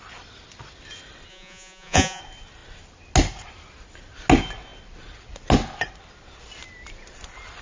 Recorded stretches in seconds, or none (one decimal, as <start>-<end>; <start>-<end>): 0.0-1.3; 2.2-7.6